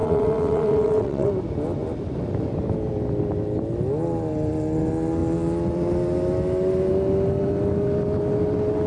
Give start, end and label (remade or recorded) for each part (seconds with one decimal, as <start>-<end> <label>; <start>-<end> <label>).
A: 0.0-1.3 remade; 1.3-8.9 recorded